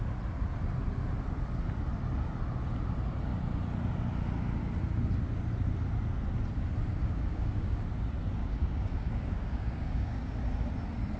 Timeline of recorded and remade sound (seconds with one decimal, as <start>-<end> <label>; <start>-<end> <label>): 0.0-6.9 recorded; 6.9-7.8 remade; 7.8-8.4 recorded; 8.4-10.4 remade; 10.4-11.2 recorded